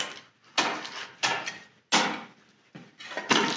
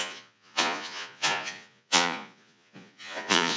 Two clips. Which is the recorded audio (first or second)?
first